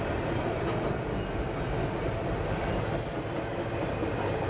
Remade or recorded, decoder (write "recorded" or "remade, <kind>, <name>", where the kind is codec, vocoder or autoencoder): recorded